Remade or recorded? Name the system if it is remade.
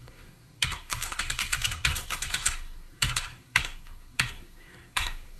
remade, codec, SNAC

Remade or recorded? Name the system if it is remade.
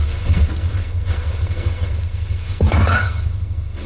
remade, codec, SNAC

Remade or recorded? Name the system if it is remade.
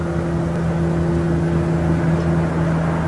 recorded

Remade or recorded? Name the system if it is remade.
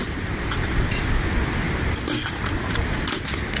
recorded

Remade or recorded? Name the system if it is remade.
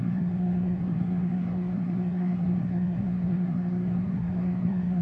remade, codec, SNAC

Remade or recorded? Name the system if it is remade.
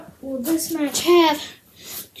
recorded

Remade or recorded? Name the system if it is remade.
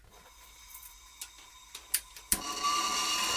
recorded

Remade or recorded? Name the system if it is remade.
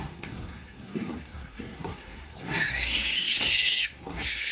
remade, codec, SNAC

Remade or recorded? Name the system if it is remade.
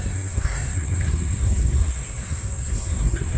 remade, codec, SNAC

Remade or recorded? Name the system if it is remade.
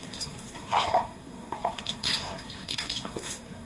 remade, codec, SNAC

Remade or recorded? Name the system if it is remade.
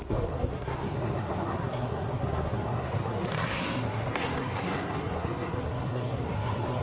remade, codec, SNAC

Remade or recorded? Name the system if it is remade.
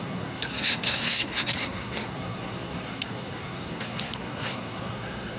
remade, codec, SNAC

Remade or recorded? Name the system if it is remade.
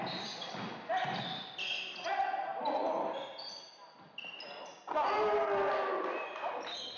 recorded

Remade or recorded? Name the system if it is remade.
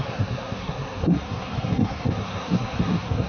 remade, codec, SNAC